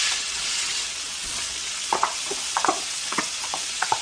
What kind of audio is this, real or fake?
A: fake